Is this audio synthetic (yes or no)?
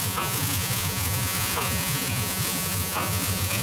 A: yes